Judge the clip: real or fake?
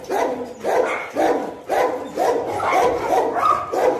real